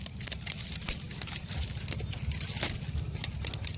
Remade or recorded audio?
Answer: recorded